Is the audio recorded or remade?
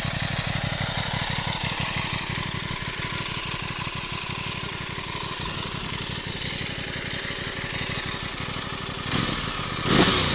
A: recorded